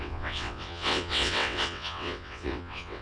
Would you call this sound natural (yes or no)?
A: no